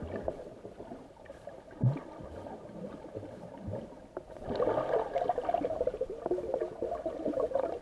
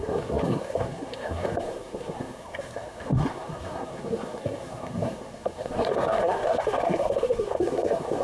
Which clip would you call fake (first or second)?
second